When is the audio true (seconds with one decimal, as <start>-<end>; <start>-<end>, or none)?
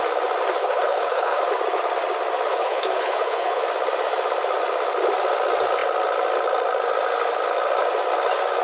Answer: 0.0-0.6; 1.4-2.5; 3.6-8.6